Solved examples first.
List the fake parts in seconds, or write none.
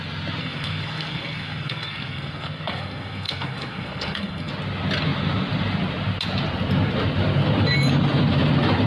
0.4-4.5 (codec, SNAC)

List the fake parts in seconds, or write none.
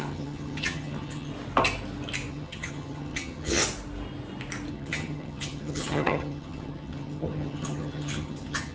0.0-1.3 (vocoder, HiFi-GAN); 2.3-3.6; 4.7-8.7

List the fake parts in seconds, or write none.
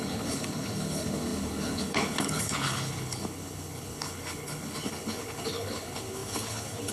0.0-6.9 (codec, HILCodec)